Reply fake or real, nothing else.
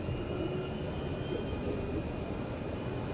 real